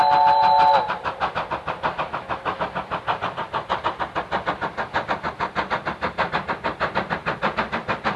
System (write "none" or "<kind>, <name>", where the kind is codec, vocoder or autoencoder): none